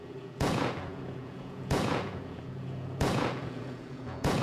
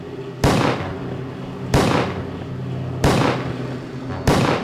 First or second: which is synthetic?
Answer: first